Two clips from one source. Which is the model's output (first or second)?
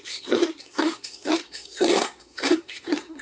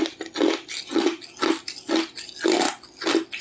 first